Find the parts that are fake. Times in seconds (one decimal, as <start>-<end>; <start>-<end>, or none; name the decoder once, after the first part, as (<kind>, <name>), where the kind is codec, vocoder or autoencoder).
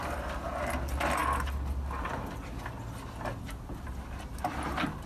none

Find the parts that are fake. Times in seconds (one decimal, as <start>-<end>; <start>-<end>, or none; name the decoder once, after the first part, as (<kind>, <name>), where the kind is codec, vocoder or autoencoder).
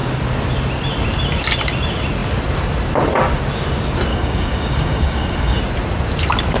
4.1-5.6 (codec, DAC)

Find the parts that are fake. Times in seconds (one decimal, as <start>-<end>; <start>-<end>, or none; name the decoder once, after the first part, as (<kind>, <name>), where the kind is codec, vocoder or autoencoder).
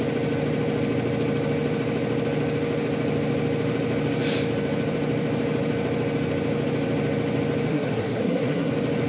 7.7-8.7 (codec, SNAC)